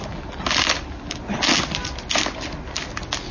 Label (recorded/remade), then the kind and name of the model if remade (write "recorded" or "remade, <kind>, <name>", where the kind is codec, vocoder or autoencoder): recorded